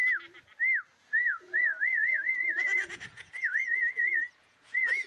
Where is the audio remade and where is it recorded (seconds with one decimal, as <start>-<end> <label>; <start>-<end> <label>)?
0.0-1.0 recorded; 1.0-5.1 remade